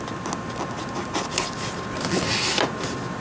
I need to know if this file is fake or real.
real